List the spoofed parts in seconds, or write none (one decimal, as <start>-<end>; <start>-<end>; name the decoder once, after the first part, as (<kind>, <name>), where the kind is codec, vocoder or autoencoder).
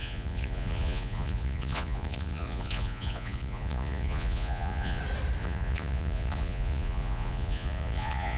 0.0-5.0 (vocoder, Vocos); 5.4-8.4